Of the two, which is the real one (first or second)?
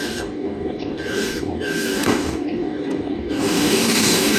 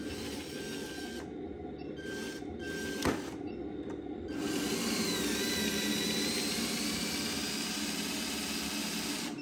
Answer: second